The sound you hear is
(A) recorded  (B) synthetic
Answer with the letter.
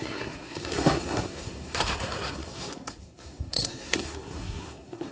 B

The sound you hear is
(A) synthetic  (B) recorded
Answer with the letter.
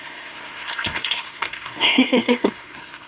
A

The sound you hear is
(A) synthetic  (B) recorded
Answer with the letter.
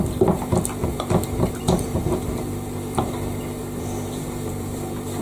A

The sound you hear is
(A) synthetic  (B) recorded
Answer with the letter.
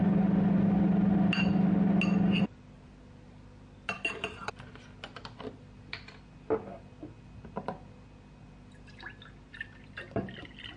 B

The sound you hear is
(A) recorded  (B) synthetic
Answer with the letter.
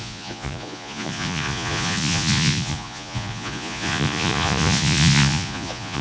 B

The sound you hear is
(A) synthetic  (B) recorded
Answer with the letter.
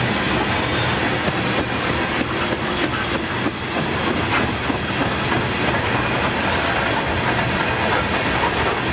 B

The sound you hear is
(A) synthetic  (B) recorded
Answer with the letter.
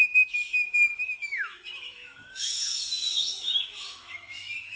A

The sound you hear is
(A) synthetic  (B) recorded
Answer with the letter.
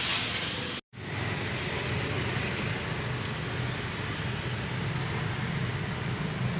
B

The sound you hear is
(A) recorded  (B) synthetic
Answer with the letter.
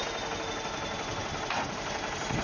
A